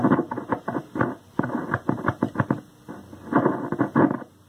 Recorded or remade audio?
recorded